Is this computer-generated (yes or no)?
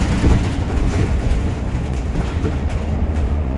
yes